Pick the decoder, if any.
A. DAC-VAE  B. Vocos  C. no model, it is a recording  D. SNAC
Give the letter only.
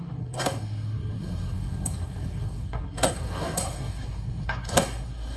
D